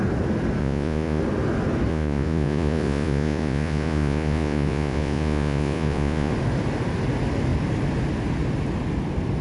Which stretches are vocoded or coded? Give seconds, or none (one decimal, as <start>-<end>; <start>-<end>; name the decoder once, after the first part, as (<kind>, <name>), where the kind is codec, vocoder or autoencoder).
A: 0.6-1.2 (vocoder, Vocos); 1.9-6.3